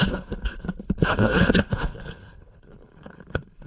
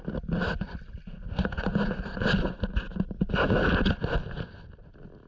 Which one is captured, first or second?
second